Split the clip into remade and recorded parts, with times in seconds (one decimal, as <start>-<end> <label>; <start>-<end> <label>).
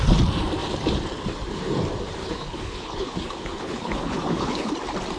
0.0-2.2 recorded; 2.2-4.7 remade; 4.7-5.2 recorded